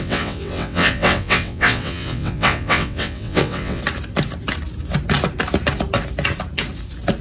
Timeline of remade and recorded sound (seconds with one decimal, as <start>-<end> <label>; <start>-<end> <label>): 0.0-3.8 remade; 3.8-7.2 recorded